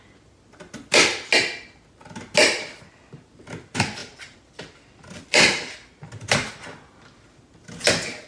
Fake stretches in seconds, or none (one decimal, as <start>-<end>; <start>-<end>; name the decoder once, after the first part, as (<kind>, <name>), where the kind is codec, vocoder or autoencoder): 4.0-5.9 (vocoder, BigVGAN v2)